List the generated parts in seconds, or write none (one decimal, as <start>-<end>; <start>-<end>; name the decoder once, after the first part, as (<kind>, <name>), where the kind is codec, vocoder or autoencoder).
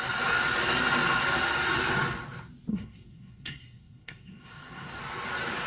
2.7-5.0 (codec, SNAC)